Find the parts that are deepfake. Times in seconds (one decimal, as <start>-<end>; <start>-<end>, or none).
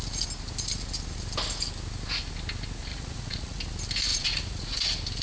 2.9-3.6; 4.1-4.8